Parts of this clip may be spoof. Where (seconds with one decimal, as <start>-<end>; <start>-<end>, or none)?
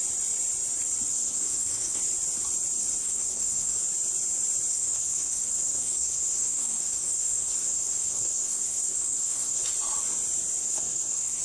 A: 1.1-2.0; 3.0-3.8; 4.7-9.6; 10.6-11.4